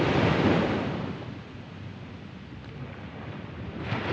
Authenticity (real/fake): real